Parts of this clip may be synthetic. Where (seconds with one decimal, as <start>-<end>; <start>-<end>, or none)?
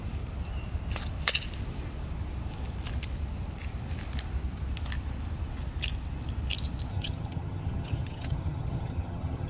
6.9-9.5